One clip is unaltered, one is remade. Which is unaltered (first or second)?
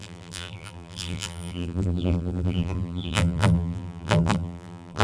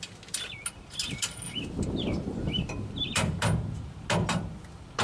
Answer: second